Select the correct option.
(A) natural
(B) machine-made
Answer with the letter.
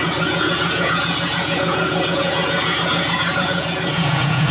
B